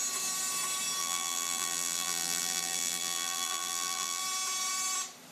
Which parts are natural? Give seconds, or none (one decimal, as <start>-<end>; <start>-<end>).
0.0-1.0; 4.2-5.3